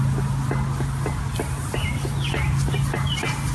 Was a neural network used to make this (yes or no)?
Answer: no